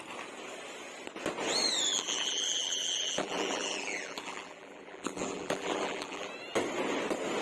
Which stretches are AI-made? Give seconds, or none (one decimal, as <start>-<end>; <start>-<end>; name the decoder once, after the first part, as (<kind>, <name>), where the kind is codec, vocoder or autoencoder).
1.9-6.3 (vocoder, BigVGAN v2)